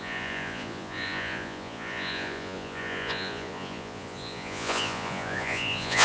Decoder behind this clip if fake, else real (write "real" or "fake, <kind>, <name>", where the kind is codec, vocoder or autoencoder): fake, vocoder, Vocos